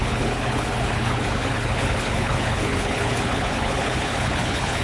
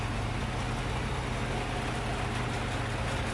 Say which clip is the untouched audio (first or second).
second